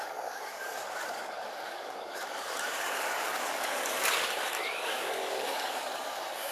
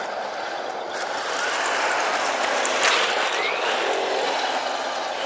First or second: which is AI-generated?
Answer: first